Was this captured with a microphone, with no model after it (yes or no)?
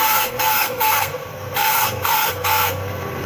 no